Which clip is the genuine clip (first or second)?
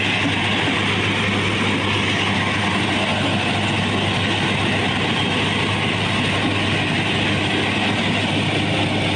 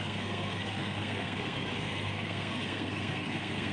first